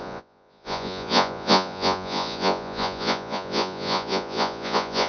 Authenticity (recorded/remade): remade